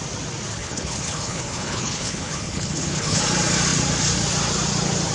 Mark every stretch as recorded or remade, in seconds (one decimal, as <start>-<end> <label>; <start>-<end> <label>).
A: 0.0-0.5 recorded; 0.5-3.2 remade; 3.2-5.1 recorded